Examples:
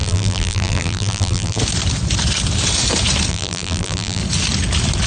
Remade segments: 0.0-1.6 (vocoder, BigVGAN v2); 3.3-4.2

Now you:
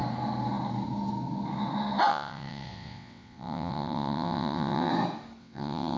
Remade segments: 2.1-4.9 (vocoder, WaveNeXt); 5.4-6.0

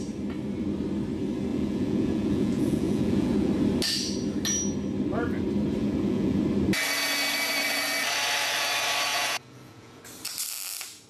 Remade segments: 1.5-3.5 (vocoder, Vocos); 5.8-6.4; 9.1-10.0

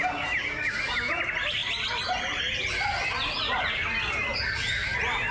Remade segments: none